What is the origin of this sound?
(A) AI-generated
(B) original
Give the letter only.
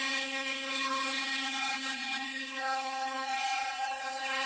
A